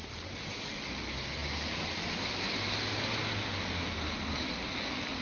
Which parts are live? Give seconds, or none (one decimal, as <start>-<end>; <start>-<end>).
0.0-5.2

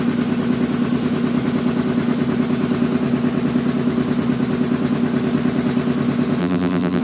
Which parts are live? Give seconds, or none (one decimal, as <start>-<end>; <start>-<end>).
0.0-6.4

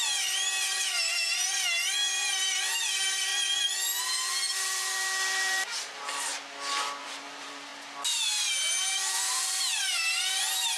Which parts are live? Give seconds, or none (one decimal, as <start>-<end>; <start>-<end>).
3.3-4.0; 6.3-7.0; 7.7-8.5

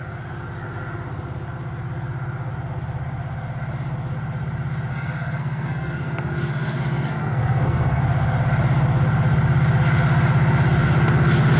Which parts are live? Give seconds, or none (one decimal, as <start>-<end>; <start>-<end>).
0.0-4.9; 8.0-11.6

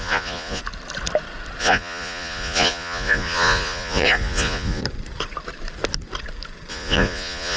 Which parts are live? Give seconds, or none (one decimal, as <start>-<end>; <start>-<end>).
0.6-1.6; 4.8-6.7